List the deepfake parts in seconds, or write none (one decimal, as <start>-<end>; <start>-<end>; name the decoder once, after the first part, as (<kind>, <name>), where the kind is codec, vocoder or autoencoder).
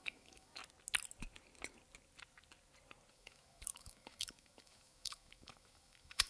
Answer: 0.0-0.6 (autoencoder, DAC-VAE); 3.1-6.3